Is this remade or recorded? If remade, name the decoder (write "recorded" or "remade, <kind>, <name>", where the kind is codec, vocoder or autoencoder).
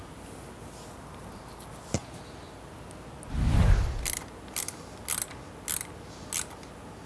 recorded